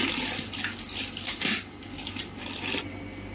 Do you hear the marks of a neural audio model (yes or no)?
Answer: no